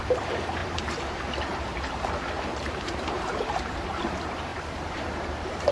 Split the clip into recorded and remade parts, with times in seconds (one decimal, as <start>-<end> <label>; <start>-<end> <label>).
0.0-5.7 remade